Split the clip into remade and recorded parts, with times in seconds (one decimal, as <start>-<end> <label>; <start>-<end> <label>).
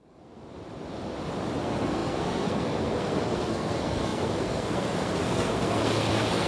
0.0-0.4 remade; 0.4-1.6 recorded; 1.6-6.5 remade